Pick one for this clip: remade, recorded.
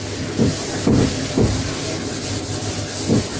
recorded